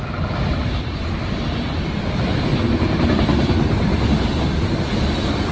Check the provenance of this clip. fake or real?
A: real